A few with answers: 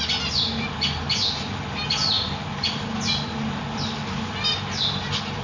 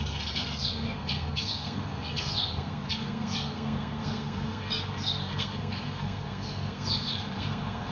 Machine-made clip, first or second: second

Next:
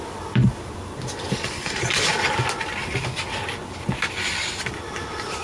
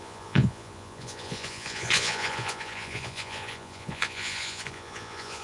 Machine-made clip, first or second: second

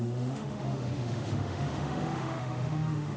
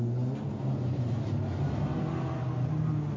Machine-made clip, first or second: first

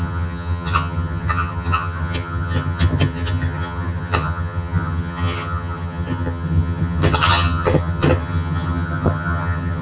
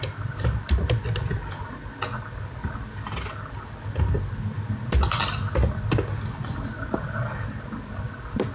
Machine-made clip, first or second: first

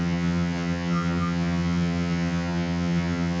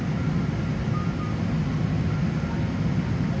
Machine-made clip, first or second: first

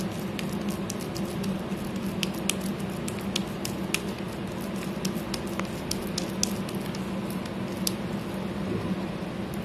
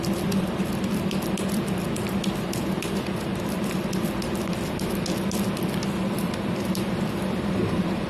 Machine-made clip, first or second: second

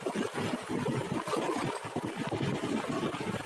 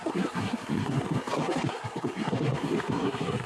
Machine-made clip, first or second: second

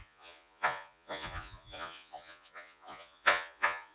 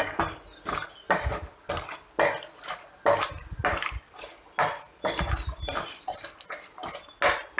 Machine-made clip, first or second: first